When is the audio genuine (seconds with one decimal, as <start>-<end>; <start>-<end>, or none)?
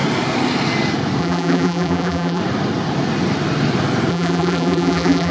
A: 0.0-1.2; 2.4-4.1